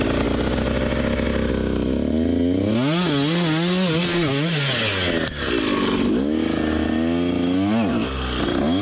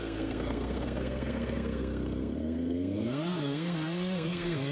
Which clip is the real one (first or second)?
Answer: first